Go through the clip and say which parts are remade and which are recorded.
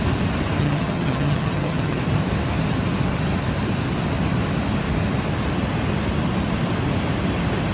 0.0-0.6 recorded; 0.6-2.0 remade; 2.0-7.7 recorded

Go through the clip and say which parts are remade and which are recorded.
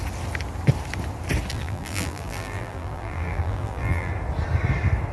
0.0-1.5 recorded; 1.5-4.1 remade; 4.1-5.1 recorded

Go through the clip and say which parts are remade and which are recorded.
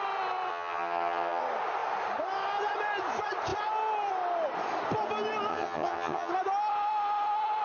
0.0-0.5 recorded; 0.5-1.4 remade; 1.4-5.5 recorded; 5.5-6.3 remade; 6.3-7.6 recorded